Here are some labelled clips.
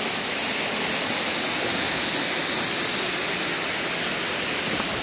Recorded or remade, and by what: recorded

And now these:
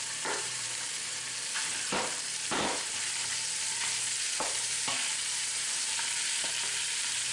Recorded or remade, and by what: remade, vocoder, BigVGAN v2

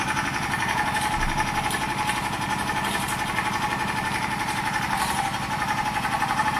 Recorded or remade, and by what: remade, vocoder, BigVGAN v2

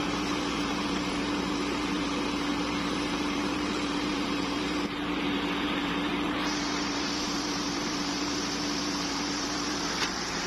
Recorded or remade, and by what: remade, vocoder, BigVGAN v2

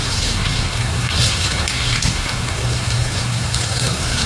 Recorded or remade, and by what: remade, codec, SNAC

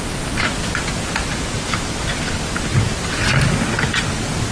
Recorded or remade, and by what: recorded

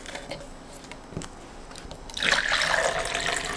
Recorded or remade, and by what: recorded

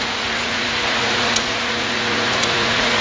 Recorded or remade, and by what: remade, vocoder, Vocos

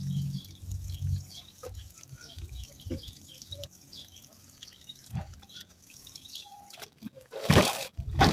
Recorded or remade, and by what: remade, codec, DAC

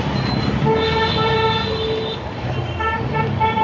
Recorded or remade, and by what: recorded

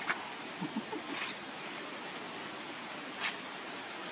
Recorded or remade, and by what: recorded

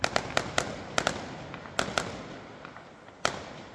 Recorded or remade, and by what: recorded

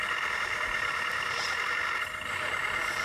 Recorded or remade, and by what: recorded